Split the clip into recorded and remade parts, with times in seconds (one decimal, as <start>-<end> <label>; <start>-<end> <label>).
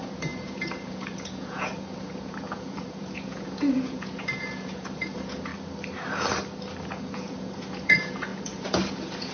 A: 0.0-5.5 remade; 5.5-6.8 recorded; 6.8-9.3 remade